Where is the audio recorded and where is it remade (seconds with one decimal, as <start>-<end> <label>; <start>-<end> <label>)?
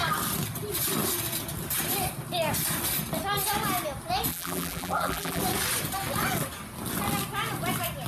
0.0-4.3 recorded; 4.3-5.4 remade; 5.4-8.1 recorded